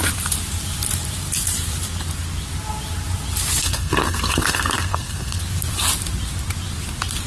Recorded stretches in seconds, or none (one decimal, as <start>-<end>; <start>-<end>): 0.0-3.6; 5.4-7.3